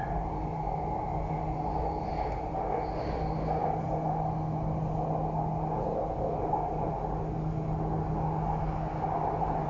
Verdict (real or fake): real